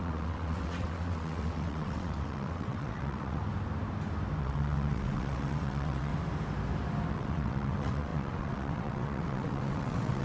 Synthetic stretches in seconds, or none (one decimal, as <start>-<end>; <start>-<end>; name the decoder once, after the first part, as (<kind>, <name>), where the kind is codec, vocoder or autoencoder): 0.0-3.4 (vocoder, WaveNeXt); 4.4-6.1; 7.1-10.2